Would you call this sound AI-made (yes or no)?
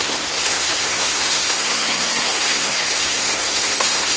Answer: yes